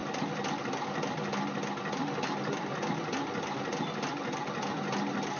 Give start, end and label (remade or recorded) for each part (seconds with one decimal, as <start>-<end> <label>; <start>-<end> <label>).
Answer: 0.0-5.4 recorded